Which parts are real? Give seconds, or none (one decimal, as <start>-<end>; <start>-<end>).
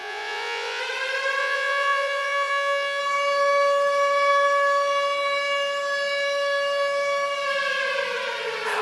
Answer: 0.8-1.4; 3.0-8.8